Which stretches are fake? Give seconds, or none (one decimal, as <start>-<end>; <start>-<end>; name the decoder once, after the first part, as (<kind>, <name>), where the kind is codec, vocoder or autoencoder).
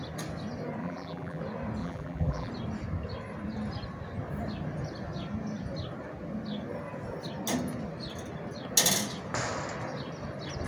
0.8-1.4 (vocoder, BigVGAN v2); 1.8-2.5